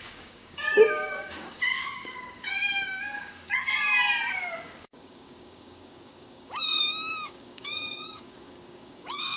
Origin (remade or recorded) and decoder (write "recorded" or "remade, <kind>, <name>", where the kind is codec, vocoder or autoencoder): remade, codec, DAC